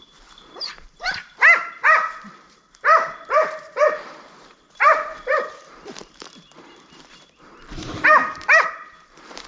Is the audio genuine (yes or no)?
no